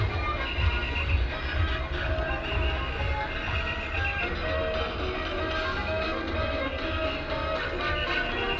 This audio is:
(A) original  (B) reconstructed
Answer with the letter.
A